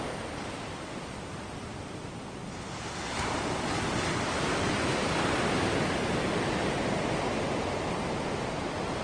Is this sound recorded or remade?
recorded